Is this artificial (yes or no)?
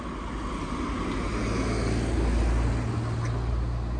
no